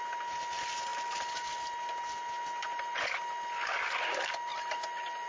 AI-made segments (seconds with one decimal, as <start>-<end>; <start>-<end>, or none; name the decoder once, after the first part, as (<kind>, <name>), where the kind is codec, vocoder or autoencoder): none